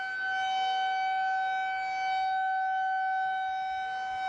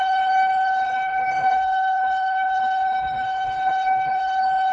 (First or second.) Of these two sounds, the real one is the first